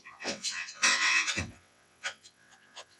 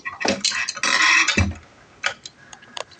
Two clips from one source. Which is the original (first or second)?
second